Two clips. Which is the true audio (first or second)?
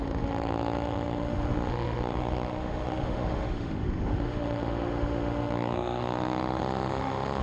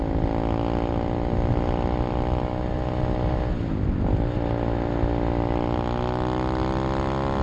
second